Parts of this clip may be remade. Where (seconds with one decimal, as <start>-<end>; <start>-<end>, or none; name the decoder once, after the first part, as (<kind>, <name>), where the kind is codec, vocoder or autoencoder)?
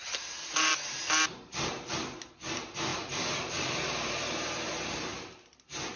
0.0-1.0 (vocoder, BigVGAN v2); 2.9-3.6